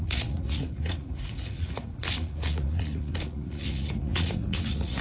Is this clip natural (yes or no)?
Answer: no